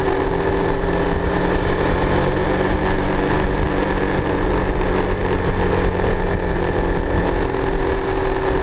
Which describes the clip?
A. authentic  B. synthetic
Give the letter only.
A